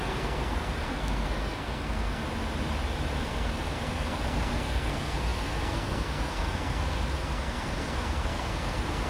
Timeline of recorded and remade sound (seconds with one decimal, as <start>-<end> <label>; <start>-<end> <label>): 0.0-2.2 remade; 2.2-3.2 recorded; 3.2-9.1 remade